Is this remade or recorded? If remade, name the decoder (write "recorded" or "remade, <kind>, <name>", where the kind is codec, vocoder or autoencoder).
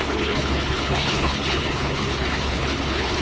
remade, codec, HILCodec